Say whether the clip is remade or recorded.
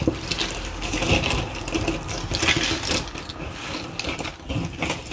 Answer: recorded